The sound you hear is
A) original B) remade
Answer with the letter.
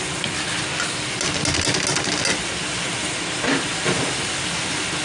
A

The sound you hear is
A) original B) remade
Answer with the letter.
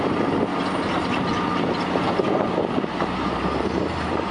B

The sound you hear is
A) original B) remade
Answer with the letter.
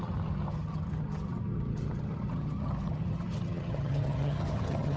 B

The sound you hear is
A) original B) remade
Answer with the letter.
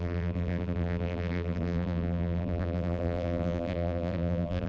B